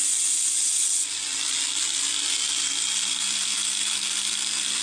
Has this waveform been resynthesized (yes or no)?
no